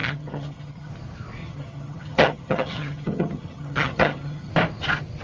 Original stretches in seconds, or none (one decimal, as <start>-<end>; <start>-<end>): 0.9-1.4; 4.5-5.2

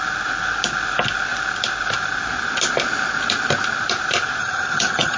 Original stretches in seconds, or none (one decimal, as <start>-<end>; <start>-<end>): 0.0-4.4